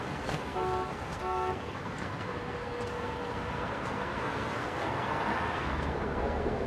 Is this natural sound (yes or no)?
no